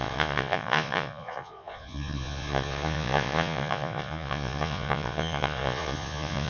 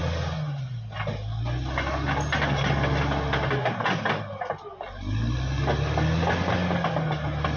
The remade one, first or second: first